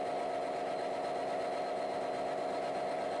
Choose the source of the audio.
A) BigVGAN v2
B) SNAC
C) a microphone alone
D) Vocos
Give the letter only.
C